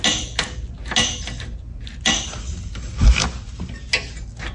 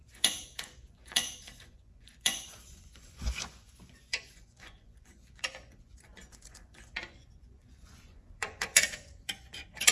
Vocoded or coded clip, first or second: second